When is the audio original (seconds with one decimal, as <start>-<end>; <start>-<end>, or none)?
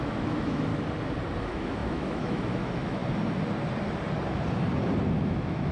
0.7-1.4; 3.0-5.2